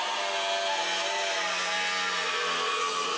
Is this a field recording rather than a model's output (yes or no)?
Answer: yes